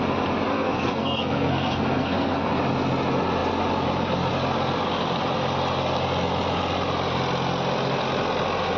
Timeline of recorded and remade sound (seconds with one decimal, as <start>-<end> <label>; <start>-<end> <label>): 0.0-0.5 recorded; 0.5-2.5 remade; 2.5-8.8 recorded